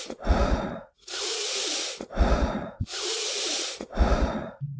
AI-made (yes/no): yes